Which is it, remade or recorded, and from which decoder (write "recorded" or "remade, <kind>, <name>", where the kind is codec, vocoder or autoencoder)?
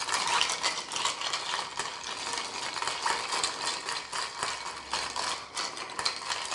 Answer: recorded